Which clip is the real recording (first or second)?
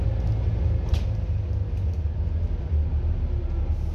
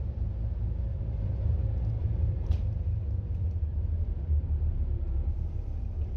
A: first